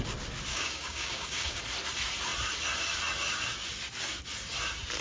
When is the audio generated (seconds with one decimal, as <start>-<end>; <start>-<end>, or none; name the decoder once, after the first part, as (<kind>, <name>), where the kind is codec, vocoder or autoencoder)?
0.5-1.6 (codec, DAC)

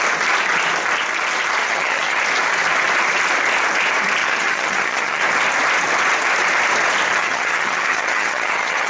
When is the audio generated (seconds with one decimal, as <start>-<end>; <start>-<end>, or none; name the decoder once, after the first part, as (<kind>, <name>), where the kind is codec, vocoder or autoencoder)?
1.6-2.2 (vocoder, HiFi-GAN); 4.2-5.2; 7.2-8.9